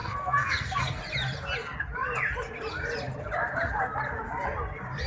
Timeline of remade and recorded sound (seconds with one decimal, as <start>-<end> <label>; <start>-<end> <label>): 0.0-1.0 remade; 1.0-5.1 recorded